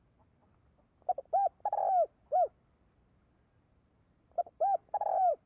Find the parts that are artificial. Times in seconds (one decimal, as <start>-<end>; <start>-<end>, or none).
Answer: 0.0-0.4; 3.7-5.5